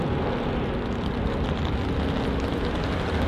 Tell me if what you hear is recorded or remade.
recorded